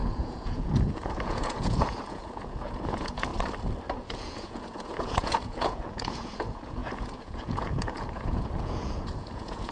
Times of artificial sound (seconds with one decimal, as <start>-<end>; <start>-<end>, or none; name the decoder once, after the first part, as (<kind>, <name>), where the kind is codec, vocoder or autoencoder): 0.0-3.3 (vocoder, Vocos); 4.0-9.7